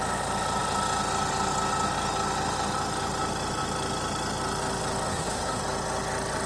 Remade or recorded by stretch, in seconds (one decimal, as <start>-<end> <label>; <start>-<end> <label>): 0.0-5.1 recorded; 5.1-5.6 remade; 5.6-6.5 recorded